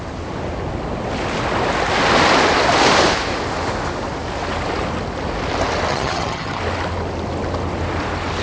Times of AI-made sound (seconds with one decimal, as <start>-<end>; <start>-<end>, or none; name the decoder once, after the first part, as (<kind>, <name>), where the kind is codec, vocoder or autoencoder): 5.9-6.6 (vocoder, HiFi-GAN)